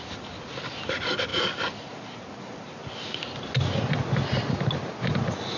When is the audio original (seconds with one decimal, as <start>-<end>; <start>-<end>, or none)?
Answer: 0.0-5.6